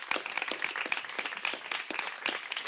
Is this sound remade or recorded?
recorded